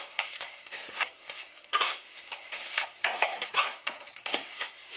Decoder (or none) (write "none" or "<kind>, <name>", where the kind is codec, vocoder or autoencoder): codec, SNAC